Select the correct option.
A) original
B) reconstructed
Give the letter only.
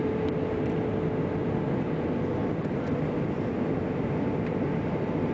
A